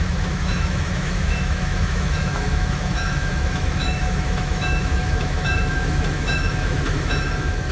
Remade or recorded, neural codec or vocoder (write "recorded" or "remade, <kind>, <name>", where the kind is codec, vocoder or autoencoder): remade, autoencoder, DAC-VAE